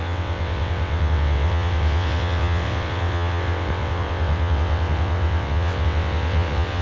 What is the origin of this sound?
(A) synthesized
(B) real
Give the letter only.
A